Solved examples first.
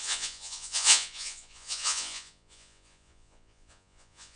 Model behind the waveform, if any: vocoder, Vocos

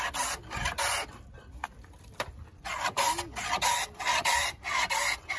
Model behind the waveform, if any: none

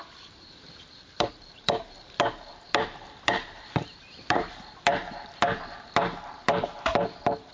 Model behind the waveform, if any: vocoder, BigVGAN v2